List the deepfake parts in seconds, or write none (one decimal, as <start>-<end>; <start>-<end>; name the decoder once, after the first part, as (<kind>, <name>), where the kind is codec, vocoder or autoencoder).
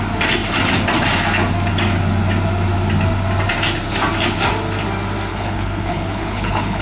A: 5.3-6.8 (codec, HILCodec)